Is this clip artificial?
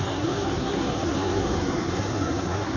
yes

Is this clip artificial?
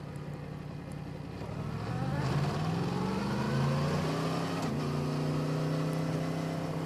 no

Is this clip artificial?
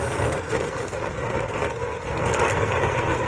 yes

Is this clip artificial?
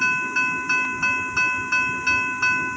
no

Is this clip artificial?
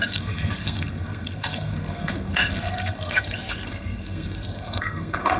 yes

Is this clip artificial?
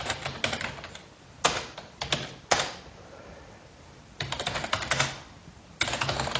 no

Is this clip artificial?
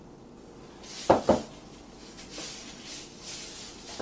no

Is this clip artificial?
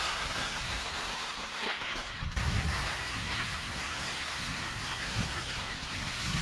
yes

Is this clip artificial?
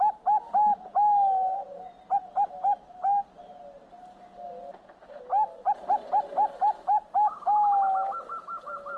no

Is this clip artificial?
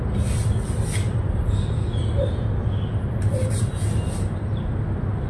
no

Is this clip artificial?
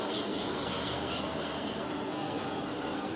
yes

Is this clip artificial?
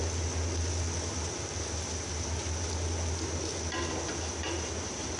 no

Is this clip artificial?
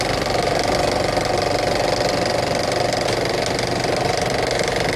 no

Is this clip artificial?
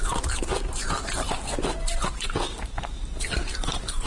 no